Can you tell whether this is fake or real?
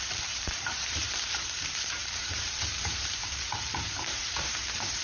fake